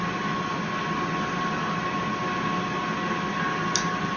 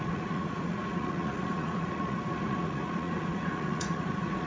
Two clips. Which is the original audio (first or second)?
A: first